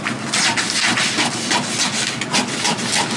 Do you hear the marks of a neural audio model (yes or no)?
no